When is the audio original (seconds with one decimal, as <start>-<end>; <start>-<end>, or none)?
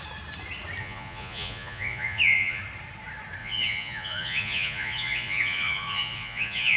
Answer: 0.0-0.8; 2.6-3.4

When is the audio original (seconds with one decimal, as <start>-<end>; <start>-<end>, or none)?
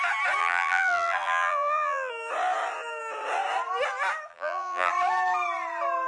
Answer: 0.0-0.4; 2.1-4.3; 4.9-6.1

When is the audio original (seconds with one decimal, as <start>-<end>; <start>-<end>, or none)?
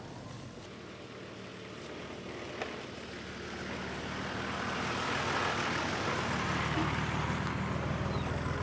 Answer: 0.0-8.6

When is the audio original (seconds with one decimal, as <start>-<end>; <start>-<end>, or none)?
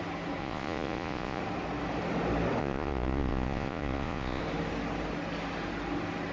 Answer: 0.0-0.4; 1.4-2.6; 4.4-6.3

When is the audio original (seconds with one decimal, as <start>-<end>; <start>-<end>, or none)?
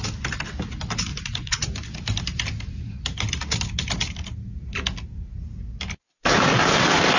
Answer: 0.0-1.1; 1.7-7.2